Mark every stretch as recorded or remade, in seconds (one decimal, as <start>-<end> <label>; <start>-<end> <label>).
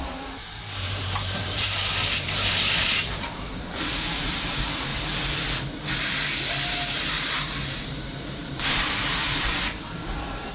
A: 0.0-4.9 remade; 4.9-6.7 recorded; 6.7-10.5 remade